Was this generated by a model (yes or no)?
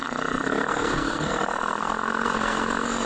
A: yes